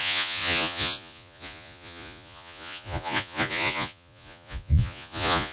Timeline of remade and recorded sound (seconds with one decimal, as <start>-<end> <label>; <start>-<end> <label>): 0.0-5.5 remade